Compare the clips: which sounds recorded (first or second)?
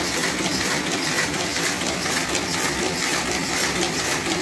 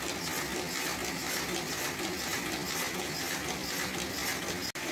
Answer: second